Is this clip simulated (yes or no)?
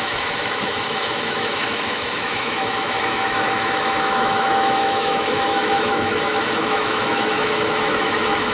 yes